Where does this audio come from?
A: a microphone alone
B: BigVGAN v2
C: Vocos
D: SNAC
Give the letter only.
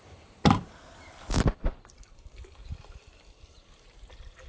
B